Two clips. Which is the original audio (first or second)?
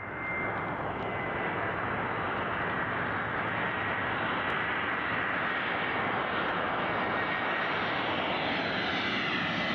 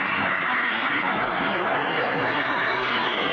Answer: first